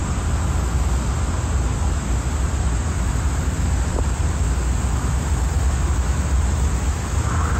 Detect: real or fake real